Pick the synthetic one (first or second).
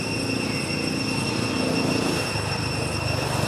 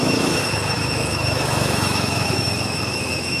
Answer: second